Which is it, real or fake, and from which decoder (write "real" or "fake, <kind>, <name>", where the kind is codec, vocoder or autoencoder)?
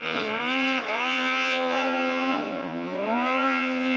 fake, vocoder, Vocos